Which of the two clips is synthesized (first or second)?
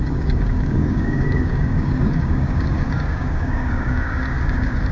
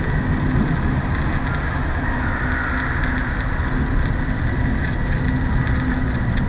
first